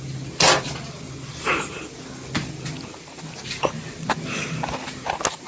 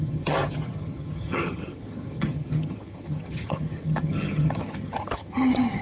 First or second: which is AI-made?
second